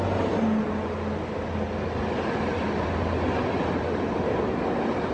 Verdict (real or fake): real